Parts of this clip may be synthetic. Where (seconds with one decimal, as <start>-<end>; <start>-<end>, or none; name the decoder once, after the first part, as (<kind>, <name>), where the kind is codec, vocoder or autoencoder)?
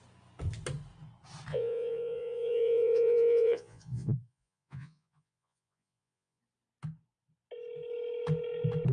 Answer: 1.5-6.4 (vocoder, Vocos)